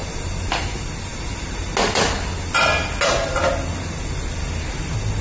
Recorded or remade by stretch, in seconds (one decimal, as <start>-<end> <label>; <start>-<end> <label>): 0.0-5.2 recorded